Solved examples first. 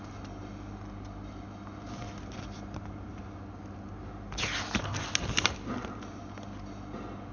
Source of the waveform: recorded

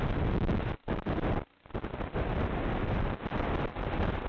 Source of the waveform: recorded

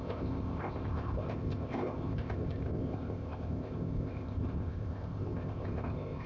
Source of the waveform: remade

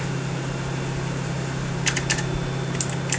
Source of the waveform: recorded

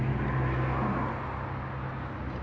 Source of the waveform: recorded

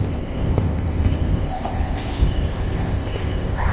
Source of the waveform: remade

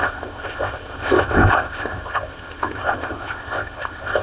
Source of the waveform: remade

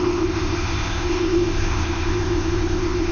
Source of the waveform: remade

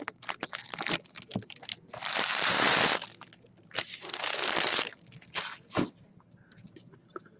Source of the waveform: recorded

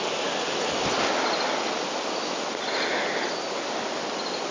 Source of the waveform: recorded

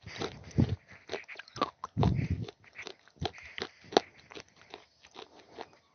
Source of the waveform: recorded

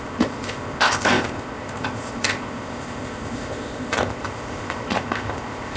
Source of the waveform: remade